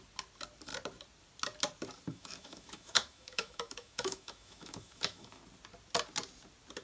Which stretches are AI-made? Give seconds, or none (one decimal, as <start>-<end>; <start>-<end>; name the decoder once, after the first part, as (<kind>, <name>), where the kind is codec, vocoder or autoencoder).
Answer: 2.1-5.4 (autoencoder, DAC-VAE)

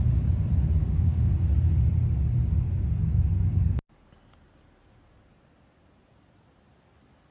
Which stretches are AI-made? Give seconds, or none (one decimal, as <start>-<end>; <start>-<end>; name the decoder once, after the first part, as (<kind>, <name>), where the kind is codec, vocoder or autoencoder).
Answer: 0.8-1.3 (autoencoder, DAC-VAE)

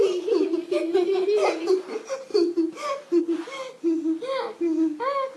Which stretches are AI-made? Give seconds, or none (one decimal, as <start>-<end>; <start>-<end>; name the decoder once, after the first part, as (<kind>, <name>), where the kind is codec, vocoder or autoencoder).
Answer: none